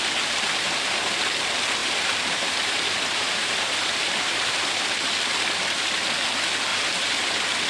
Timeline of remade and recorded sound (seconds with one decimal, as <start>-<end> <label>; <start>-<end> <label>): 0.0-1.8 recorded; 1.8-4.6 remade; 4.6-6.7 recorded; 6.7-7.3 remade; 7.3-7.7 recorded